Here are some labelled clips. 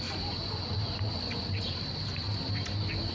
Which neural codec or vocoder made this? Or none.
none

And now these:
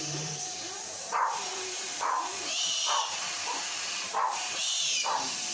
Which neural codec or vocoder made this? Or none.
vocoder, BigVGAN v2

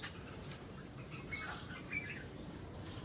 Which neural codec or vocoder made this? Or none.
vocoder, BigVGAN v2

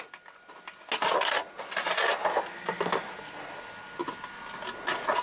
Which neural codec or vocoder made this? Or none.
none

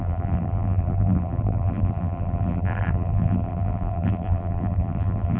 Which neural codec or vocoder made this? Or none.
vocoder, BigVGAN v2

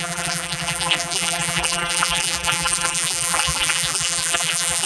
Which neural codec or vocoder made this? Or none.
vocoder, BigVGAN v2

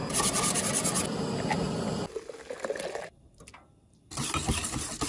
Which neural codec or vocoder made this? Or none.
none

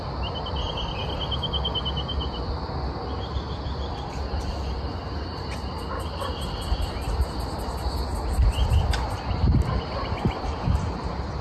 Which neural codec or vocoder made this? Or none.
none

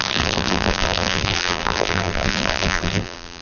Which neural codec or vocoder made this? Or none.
vocoder, BigVGAN v2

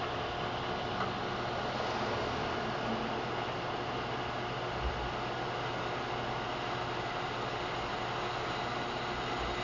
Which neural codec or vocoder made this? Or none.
none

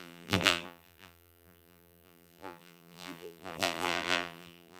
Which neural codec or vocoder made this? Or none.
vocoder, BigVGAN v2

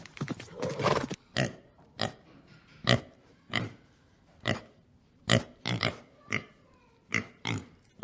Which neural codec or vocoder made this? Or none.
vocoder, BigVGAN v2